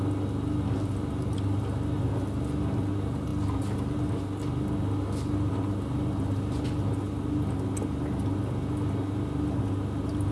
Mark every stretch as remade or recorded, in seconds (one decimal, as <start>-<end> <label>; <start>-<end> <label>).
0.0-10.3 recorded